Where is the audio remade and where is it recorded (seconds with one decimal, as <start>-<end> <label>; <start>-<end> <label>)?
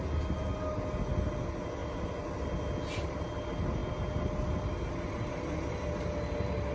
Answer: 0.0-6.7 recorded